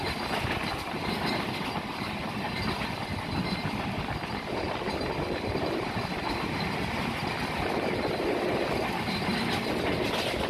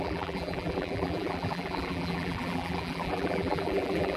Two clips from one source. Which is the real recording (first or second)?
first